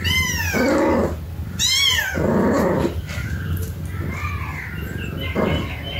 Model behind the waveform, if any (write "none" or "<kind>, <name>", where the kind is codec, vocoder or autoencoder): none